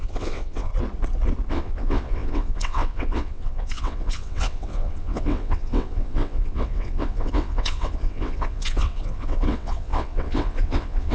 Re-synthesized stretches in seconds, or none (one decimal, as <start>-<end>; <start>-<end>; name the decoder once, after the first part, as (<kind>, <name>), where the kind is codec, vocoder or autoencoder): 0.0-0.7 (vocoder, WaveNeXt); 1.5-11.1